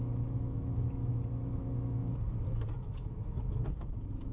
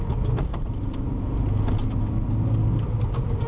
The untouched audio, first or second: second